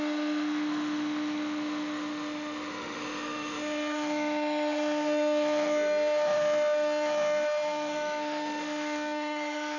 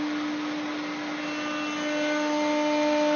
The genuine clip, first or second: second